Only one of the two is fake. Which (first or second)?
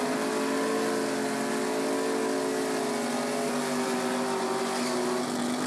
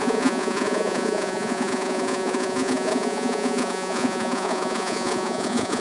second